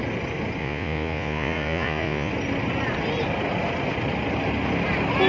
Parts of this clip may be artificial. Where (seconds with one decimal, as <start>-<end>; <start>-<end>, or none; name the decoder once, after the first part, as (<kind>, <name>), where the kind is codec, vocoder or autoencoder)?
0.6-2.3 (vocoder, Vocos)